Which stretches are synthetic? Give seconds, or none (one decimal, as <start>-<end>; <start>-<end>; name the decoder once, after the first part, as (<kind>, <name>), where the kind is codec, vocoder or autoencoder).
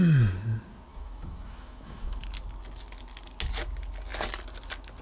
0.9-2.2 (autoencoder, DAC-VAE)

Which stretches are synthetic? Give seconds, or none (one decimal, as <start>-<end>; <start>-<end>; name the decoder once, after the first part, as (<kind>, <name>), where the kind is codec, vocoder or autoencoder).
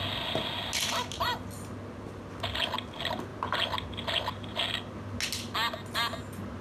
none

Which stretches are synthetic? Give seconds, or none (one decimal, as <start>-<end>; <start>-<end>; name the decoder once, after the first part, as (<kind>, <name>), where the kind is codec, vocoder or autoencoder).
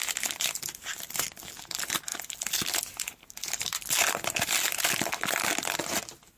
none